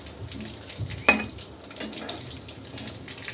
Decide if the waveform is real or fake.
real